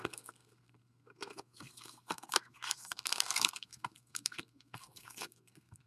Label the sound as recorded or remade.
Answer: remade